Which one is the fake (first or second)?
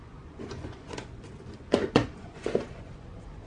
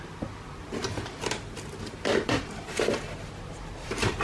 first